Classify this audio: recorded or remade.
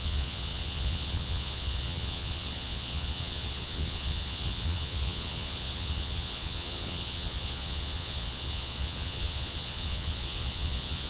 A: remade